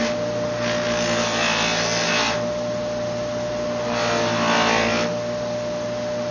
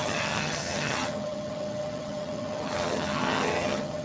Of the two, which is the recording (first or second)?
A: first